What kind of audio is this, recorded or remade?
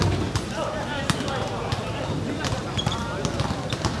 recorded